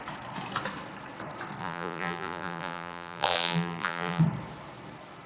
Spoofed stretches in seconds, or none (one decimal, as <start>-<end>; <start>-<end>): 1.6-4.2